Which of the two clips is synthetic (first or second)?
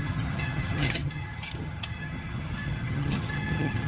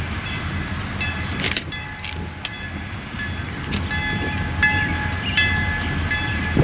first